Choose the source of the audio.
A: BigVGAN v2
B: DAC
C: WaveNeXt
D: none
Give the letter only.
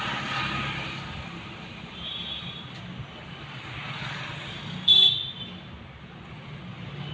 D